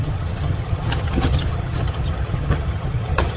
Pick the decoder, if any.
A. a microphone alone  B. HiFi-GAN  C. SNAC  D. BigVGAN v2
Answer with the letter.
B